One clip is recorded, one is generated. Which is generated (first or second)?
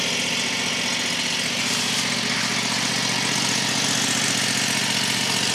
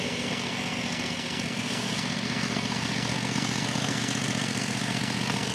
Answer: second